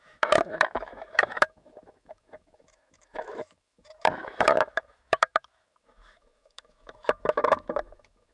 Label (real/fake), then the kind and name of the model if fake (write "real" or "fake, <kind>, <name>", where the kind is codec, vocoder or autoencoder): fake, autoencoder, DAC-VAE